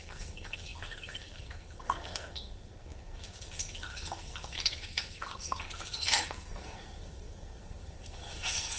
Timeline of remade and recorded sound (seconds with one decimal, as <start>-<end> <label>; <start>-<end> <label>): 0.0-8.8 remade